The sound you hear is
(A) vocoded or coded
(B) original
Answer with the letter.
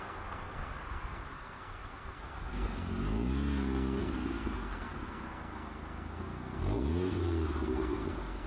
A